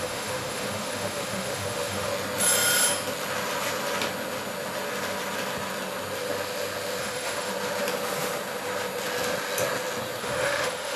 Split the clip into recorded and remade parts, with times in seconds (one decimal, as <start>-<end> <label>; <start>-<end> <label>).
0.0-2.1 remade; 2.1-7.0 recorded; 7.0-7.5 remade; 7.5-10.2 recorded; 10.2-11.0 remade